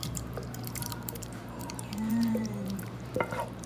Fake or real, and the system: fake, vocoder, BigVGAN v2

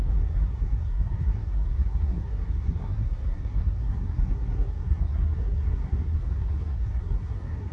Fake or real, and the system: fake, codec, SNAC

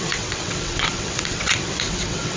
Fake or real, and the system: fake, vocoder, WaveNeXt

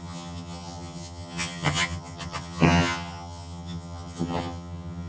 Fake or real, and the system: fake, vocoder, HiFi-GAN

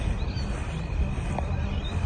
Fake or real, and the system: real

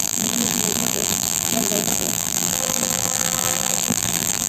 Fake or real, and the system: fake, vocoder, BigVGAN v2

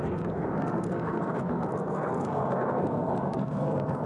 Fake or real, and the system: fake, codec, SNAC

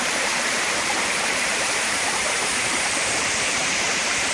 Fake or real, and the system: fake, vocoder, BigVGAN v2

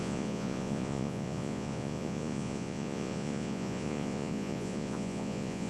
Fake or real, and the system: fake, vocoder, Vocos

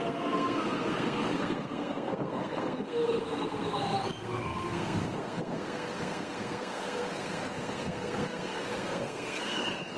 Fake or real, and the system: fake, codec, SNAC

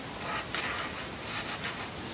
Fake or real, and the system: real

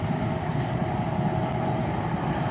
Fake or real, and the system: real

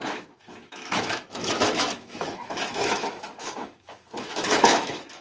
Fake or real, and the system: fake, autoencoder, DAC-VAE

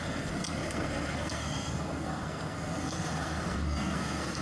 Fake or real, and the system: fake, codec, SNAC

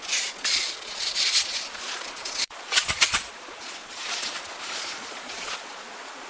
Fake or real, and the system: fake, vocoder, Vocos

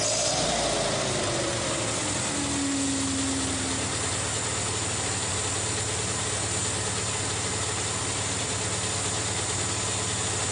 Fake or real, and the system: real